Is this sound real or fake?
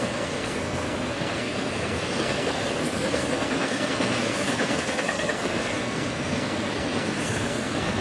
fake